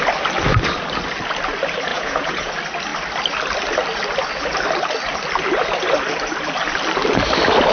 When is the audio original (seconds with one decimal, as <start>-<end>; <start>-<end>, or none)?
0.0-1.9; 2.5-7.7